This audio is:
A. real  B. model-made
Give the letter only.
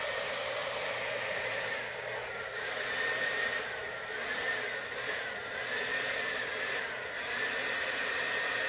B